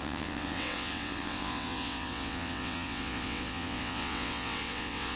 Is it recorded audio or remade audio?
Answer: remade